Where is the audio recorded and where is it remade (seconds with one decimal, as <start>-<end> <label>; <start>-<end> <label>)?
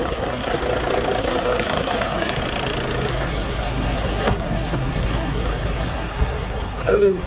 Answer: 0.0-0.6 remade; 0.6-1.2 recorded; 1.2-2.4 remade; 2.4-3.1 recorded; 3.1-7.3 remade